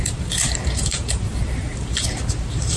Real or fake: fake